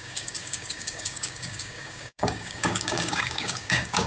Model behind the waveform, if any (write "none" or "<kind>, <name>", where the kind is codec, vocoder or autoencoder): codec, DAC